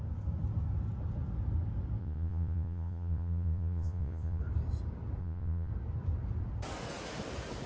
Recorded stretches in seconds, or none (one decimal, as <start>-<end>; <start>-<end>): 0.0-2.0; 4.4-5.2; 5.7-7.7